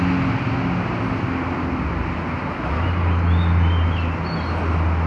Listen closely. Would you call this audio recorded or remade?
recorded